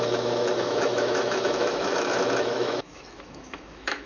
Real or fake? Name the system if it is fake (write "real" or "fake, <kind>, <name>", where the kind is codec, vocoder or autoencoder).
fake, autoencoder, DAC-VAE